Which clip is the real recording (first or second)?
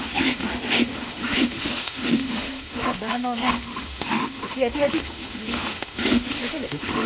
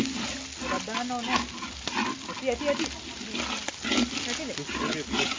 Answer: second